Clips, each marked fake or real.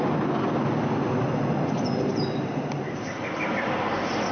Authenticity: real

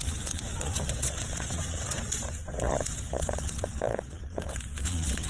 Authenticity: fake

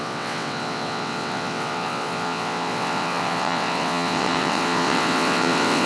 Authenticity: fake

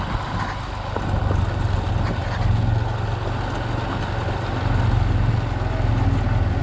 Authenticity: real